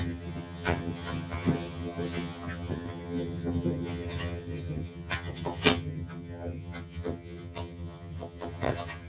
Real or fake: fake